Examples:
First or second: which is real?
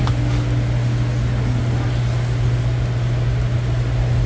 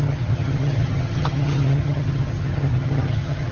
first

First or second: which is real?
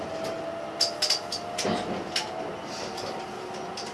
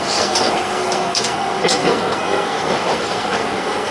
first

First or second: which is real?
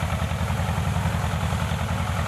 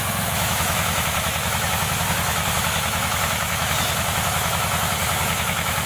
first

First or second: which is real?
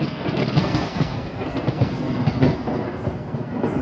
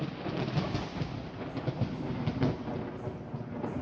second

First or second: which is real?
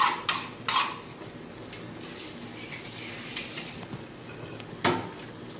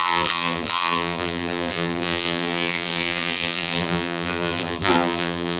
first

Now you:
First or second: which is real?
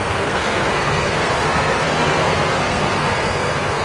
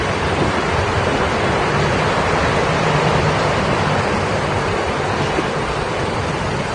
second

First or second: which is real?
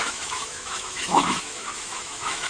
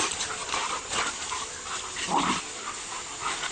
second